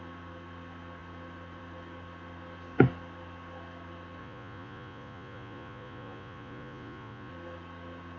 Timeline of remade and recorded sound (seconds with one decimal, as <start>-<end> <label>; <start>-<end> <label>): 0.0-4.2 recorded; 4.2-7.3 remade; 7.3-8.2 recorded